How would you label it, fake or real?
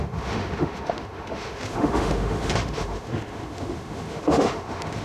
fake